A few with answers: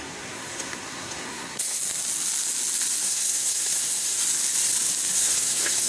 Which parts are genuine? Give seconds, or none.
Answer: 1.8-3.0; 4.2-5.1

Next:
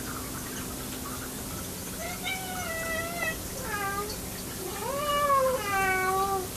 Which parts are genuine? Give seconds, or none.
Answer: 0.0-6.6

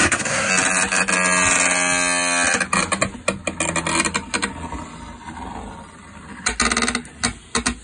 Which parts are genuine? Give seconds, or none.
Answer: 0.5-7.8

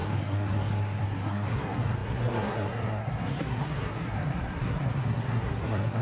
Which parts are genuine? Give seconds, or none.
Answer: none

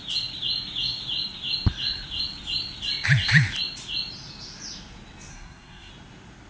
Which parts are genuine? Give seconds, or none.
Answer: 0.0-5.3; 5.9-6.5

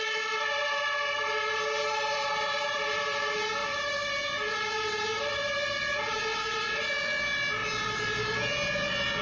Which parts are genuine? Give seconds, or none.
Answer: 0.0-9.2

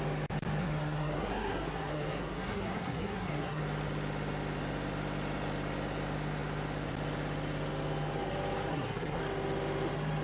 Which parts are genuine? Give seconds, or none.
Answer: 0.0-0.6; 3.6-8.7; 9.2-10.2